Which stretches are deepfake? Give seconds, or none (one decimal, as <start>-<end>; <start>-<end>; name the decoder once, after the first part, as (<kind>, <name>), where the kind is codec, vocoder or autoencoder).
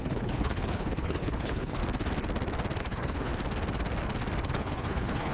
0.0-1.8 (codec, HILCodec); 2.8-3.3; 4.5-5.3